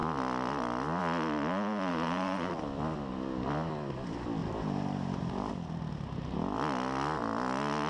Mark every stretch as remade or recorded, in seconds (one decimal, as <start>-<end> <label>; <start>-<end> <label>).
0.0-1.9 recorded; 1.9-2.5 remade; 2.5-4.4 recorded; 4.4-5.5 remade; 5.5-7.9 recorded